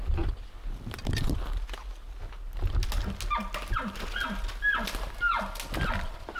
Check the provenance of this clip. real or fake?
real